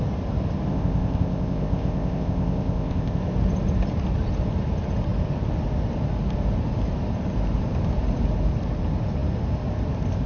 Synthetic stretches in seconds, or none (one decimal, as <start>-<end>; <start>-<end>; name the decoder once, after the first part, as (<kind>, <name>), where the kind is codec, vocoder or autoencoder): 0.7-3.2 (codec, ZipCodec)